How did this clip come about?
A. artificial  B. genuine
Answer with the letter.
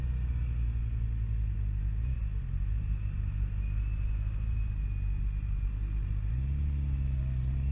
B